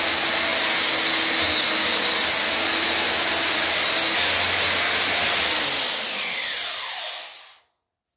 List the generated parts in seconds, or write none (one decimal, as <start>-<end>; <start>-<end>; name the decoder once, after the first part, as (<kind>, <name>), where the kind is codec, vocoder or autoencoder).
none